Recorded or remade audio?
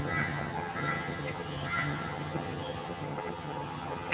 remade